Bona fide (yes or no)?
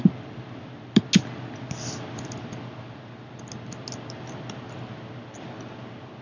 yes